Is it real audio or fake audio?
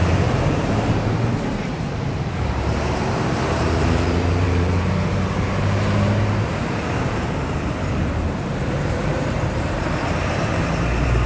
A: fake